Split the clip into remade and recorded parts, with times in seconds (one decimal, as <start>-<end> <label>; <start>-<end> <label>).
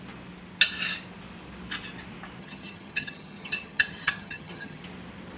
0.0-2.4 recorded; 2.4-4.8 remade; 4.8-5.4 recorded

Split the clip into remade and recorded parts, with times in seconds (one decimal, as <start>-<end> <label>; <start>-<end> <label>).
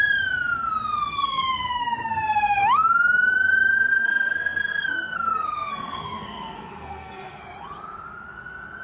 0.0-1.1 recorded; 1.1-2.6 remade; 2.6-3.7 recorded; 3.7-7.4 remade; 7.4-8.8 recorded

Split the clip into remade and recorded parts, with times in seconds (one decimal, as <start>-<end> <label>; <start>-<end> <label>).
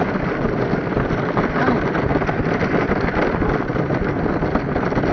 0.0-5.1 recorded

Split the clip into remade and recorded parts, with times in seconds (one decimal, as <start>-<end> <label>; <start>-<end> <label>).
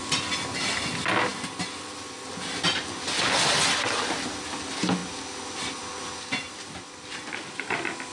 0.0-8.1 recorded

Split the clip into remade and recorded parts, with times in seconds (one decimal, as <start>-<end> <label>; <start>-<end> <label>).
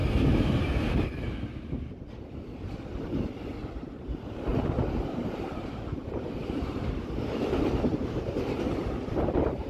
0.0-0.9 remade; 0.9-4.5 recorded; 4.5-6.8 remade; 6.8-7.9 recorded; 7.9-8.6 remade; 8.6-9.7 recorded